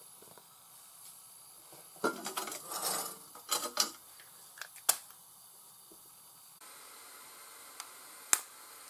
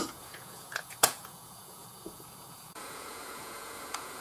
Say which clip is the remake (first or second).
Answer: second